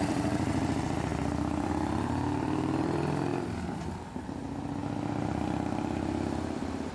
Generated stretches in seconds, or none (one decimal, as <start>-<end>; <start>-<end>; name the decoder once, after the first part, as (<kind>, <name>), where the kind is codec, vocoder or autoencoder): 0.0-4.8 (vocoder, BigVGAN v2)